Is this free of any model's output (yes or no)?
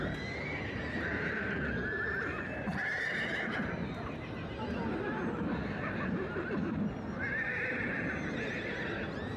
yes